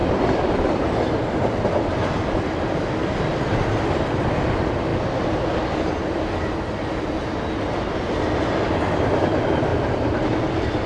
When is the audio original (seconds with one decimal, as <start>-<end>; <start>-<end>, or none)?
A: 1.9-4.9; 5.7-9.7; 10.4-10.9